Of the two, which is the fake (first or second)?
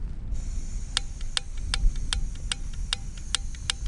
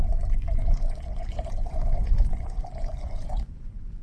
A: second